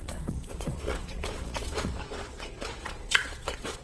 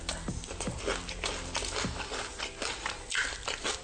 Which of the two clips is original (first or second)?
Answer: second